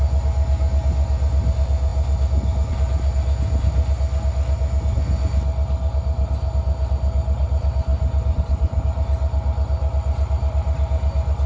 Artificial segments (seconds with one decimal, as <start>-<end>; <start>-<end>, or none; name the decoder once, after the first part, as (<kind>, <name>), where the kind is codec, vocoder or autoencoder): none

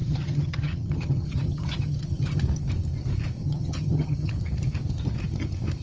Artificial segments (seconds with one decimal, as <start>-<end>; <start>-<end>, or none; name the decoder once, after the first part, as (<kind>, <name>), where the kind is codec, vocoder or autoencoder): 0.0-2.4 (vocoder, HiFi-GAN); 3.4-4.3